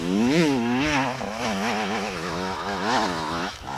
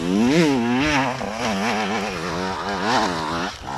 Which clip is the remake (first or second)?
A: first